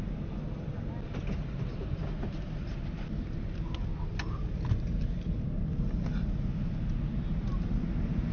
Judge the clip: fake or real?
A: real